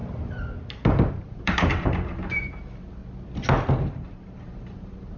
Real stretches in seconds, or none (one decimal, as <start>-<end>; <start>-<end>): 0.0-1.3; 3.0-3.8